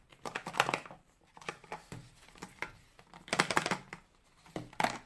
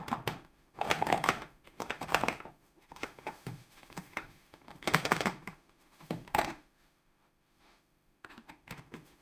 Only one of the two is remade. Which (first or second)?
second